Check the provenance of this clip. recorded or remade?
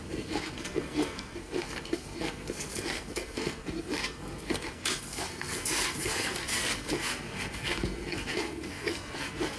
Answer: remade